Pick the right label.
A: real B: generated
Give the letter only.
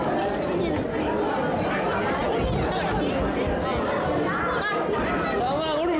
A